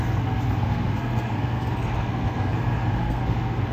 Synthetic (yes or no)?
yes